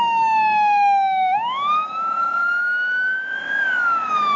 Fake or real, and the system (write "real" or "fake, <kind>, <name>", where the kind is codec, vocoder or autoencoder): fake, autoencoder, DAC-VAE